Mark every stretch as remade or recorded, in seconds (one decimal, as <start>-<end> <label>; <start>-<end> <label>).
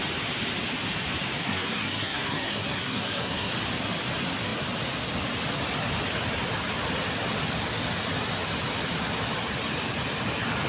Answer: 0.0-1.4 recorded; 1.4-3.5 remade; 3.5-10.7 recorded